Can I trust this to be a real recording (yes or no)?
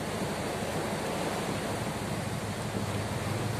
yes